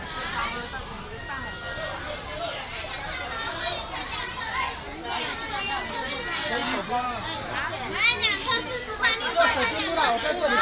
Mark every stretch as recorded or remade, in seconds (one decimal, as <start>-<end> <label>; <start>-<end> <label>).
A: 0.0-10.6 recorded